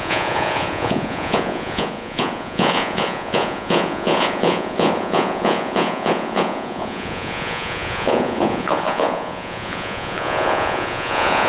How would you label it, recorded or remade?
remade